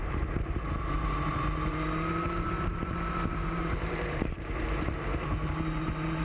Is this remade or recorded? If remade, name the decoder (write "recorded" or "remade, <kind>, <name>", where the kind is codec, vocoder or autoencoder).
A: remade, vocoder, BigVGAN v2